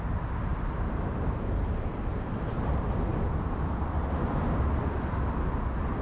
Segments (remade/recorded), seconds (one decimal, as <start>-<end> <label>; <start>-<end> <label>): 0.0-0.5 recorded; 0.5-2.1 remade; 2.1-6.0 recorded